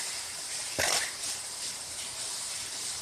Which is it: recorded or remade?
remade